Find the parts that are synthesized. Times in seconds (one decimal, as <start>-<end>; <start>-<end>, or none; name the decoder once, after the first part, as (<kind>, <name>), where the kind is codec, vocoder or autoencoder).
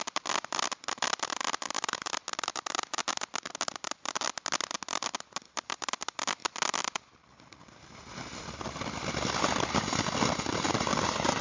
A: none